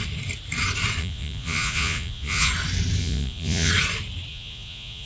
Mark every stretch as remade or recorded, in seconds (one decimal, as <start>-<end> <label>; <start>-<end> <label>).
0.0-1.0 recorded; 1.0-2.5 remade; 2.5-3.0 recorded; 3.0-3.7 remade; 3.7-4.3 recorded; 4.3-5.1 remade